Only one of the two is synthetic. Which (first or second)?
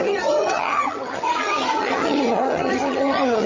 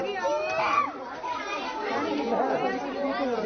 first